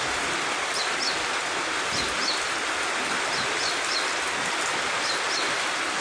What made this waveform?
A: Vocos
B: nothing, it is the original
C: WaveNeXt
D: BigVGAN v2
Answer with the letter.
B